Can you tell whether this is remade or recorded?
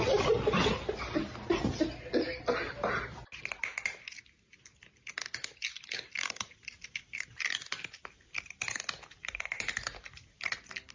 recorded